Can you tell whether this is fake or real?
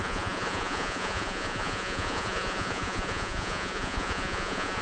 fake